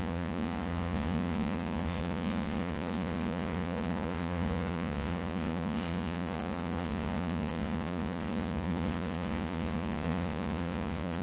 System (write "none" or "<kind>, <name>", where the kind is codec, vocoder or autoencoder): vocoder, Vocos